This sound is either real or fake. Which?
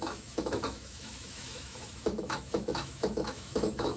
fake